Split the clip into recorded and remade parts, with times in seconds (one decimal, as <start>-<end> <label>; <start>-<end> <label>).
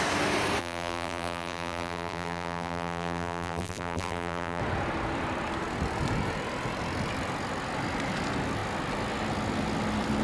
0.0-0.6 recorded; 0.6-4.6 remade; 4.6-10.2 recorded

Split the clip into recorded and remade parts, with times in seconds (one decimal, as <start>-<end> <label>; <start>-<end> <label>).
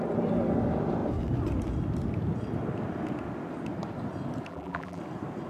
0.0-4.5 recorded; 4.5-5.0 remade; 5.0-5.5 recorded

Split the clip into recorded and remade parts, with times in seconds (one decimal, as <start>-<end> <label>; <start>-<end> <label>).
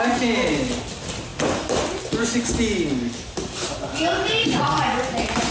0.0-5.5 recorded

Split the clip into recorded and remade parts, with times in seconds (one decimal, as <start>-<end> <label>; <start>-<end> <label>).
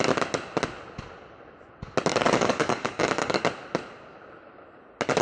0.0-2.1 recorded; 2.1-3.4 remade; 3.4-5.2 recorded